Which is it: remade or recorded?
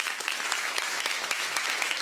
remade